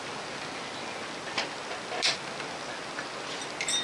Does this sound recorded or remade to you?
recorded